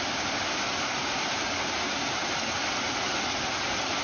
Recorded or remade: recorded